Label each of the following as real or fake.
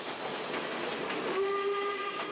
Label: real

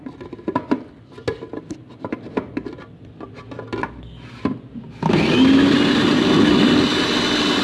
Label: real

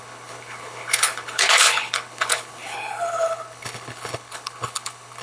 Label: fake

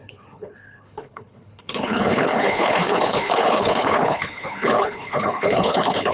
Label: fake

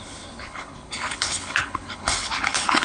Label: fake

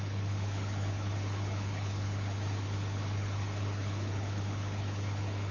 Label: fake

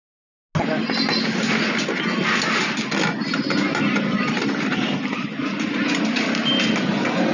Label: real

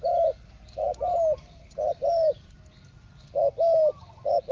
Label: real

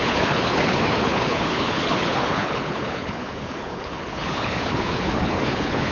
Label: fake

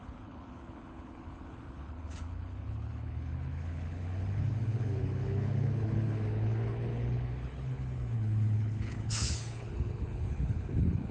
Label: fake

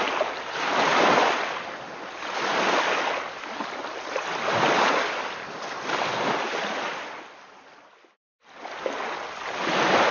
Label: real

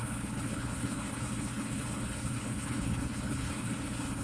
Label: fake